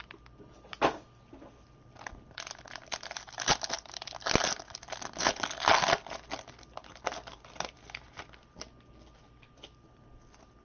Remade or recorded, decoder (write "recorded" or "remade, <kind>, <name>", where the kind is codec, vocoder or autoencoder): recorded